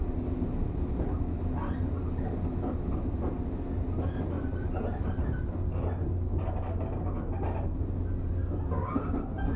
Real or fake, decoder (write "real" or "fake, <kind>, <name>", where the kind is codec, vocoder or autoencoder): real